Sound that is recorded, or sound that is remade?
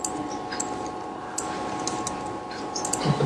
recorded